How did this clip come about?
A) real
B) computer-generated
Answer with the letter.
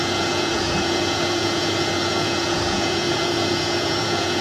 B